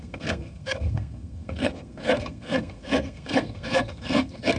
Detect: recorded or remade remade